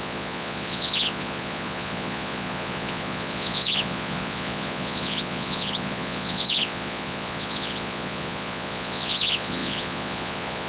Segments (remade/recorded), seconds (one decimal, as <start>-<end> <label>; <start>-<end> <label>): 0.0-10.7 remade